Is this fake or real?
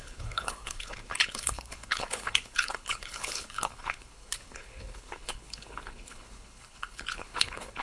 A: fake